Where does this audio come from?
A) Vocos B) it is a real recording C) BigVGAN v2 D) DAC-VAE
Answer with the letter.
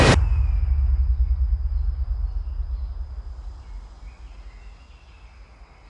B